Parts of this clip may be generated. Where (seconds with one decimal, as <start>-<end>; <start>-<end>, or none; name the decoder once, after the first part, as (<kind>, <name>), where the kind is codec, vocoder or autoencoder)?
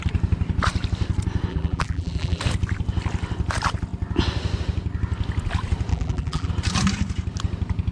1.5-2.4 (vocoder, BigVGAN v2); 5.9-6.5